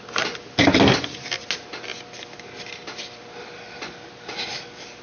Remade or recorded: recorded